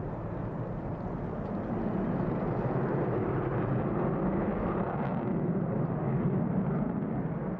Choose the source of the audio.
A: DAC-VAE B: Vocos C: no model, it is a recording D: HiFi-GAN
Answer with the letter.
C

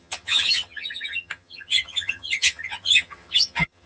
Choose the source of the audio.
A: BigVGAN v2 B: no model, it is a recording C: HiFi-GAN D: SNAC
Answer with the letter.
C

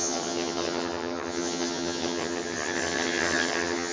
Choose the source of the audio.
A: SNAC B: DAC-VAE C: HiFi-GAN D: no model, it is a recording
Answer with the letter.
C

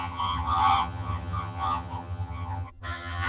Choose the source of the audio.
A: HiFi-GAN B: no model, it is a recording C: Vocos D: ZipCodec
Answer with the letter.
A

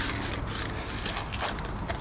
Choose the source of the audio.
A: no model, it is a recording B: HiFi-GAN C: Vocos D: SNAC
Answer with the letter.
A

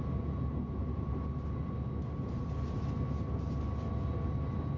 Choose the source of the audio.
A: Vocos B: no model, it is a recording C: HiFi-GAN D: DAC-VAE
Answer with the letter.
B